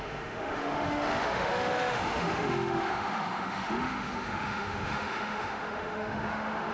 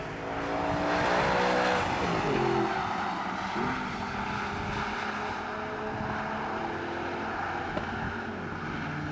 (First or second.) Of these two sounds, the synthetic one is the first